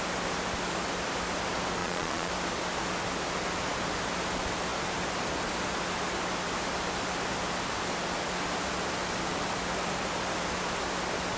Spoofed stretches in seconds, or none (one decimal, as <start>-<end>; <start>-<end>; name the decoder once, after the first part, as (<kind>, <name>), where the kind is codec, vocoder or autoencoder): 1.8-2.3 (vocoder, Vocos)